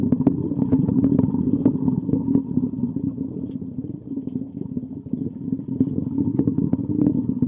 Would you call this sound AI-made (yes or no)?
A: no